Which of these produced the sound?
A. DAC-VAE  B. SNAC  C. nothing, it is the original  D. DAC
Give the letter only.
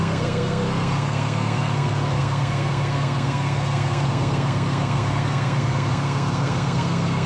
B